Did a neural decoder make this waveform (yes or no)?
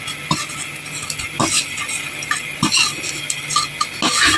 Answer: no